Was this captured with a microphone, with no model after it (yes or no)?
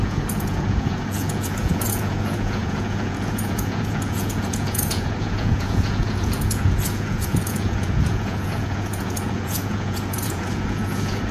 no